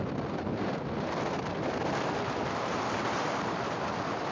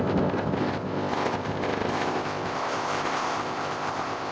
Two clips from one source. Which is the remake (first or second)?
second